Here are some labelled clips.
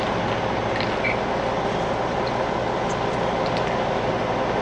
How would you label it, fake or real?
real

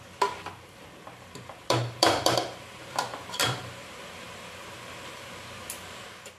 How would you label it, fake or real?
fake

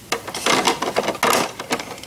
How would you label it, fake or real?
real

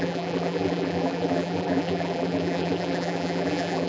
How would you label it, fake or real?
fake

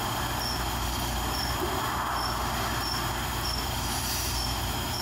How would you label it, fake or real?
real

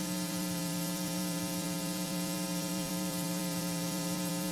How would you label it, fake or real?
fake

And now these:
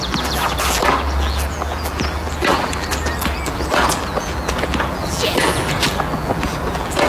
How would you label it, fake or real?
fake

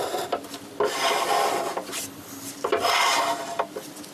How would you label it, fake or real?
real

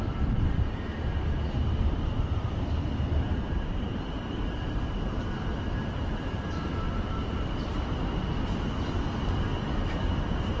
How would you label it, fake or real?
fake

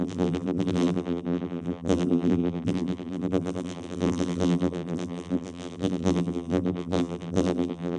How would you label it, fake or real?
fake